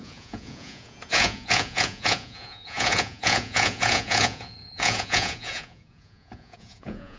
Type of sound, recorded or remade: remade